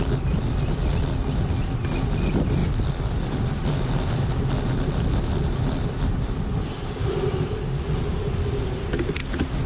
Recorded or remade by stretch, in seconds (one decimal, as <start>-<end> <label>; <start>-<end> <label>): 0.0-9.7 recorded